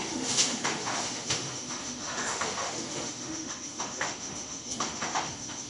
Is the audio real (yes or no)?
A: no